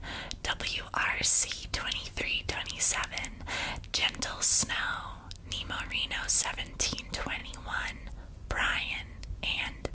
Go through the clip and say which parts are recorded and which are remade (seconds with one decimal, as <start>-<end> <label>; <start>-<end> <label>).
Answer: 0.0-1.0 recorded; 1.0-2.5 remade; 2.5-7.4 recorded; 7.4-9.9 remade